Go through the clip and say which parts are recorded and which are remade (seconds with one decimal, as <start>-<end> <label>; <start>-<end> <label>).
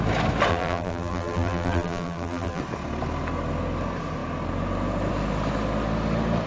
0.0-0.5 recorded; 0.5-2.6 remade; 2.6-6.5 recorded